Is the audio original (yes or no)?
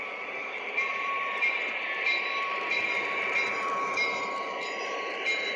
no